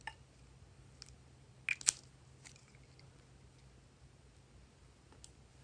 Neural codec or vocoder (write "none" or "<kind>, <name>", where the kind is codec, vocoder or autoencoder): none